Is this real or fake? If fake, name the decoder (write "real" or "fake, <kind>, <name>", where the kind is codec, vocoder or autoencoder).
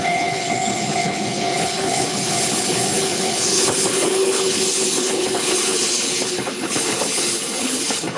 fake, codec, HILCodec